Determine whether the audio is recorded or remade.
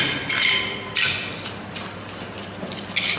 recorded